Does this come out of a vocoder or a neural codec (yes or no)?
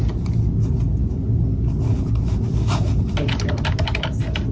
no